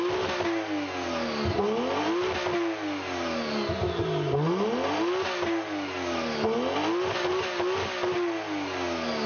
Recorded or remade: recorded